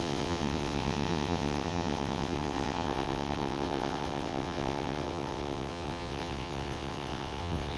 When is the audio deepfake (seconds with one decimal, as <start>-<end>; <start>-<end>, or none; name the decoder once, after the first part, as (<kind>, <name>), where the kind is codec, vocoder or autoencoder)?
0.0-7.8 (vocoder, WaveNeXt)